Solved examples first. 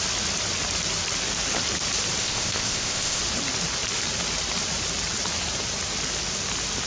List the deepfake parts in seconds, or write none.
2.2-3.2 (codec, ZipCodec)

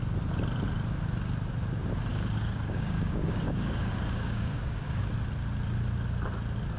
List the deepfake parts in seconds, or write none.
2.1-5.1 (codec, DAC)

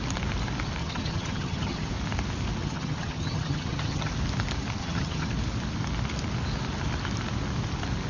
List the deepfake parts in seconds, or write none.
0.8-1.9 (vocoder, HiFi-GAN); 2.6-4.1; 4.8-5.3